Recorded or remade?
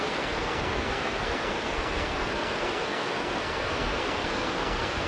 remade